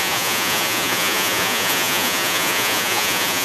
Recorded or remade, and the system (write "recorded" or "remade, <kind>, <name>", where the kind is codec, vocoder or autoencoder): remade, vocoder, Vocos